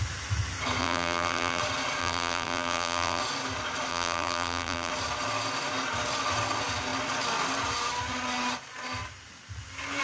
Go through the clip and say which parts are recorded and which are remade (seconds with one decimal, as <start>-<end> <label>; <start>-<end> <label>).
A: 0.0-0.8 recorded; 0.8-1.6 remade; 1.6-2.0 recorded; 2.0-3.2 remade; 3.2-3.9 recorded; 3.9-4.9 remade; 4.9-10.0 recorded

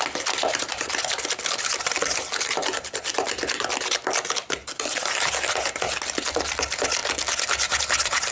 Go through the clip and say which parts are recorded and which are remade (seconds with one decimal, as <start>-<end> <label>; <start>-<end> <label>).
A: 0.0-4.6 remade; 4.6-6.1 recorded; 6.1-8.3 remade

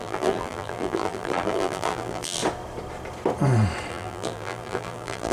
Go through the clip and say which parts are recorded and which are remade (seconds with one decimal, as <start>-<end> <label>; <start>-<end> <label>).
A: 0.0-2.4 remade; 2.4-3.9 recorded; 3.9-5.3 remade

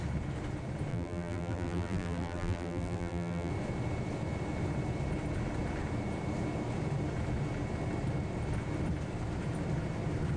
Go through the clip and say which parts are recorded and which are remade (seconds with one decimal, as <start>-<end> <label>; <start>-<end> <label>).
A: 0.0-0.9 recorded; 0.9-3.5 remade; 3.5-10.4 recorded

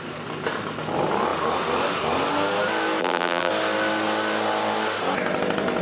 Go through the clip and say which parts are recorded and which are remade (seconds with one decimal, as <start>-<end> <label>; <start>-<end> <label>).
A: 0.0-3.0 recorded; 3.0-3.5 remade; 3.5-5.8 recorded